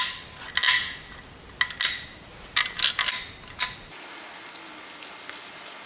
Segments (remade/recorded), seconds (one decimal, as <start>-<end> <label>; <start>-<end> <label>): 0.0-5.9 recorded